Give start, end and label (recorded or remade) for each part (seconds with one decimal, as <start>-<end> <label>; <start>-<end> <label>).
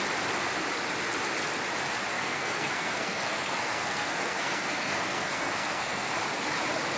0.0-2.1 recorded; 2.1-6.1 remade; 6.1-7.0 recorded